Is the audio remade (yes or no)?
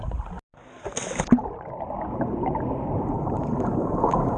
no